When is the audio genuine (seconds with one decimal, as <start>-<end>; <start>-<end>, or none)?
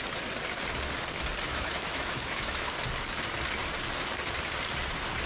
0.0-1.5; 2.7-5.3